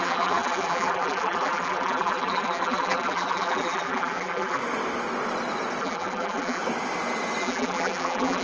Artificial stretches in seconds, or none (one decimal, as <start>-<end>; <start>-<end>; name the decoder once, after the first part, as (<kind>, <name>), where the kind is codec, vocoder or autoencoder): 0.0-4.6 (vocoder, BigVGAN v2); 5.8-6.6; 7.4-8.4